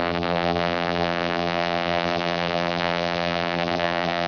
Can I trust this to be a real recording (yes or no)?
no